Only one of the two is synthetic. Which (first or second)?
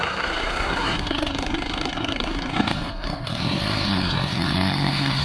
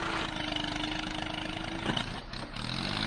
first